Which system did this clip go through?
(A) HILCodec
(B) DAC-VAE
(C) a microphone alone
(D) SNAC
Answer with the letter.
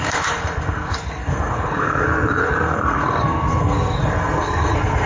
D